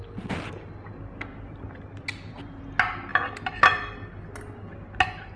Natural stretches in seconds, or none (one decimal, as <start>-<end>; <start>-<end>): 0.0-1.3; 2.7-5.4